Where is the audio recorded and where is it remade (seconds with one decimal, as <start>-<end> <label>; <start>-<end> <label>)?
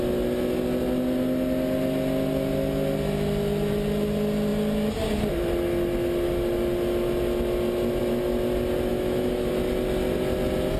0.0-8.9 recorded; 8.9-9.5 remade; 9.5-10.8 recorded